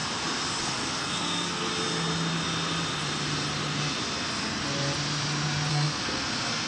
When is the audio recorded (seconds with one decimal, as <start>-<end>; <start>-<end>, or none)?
0.0-0.6; 1.7-5.7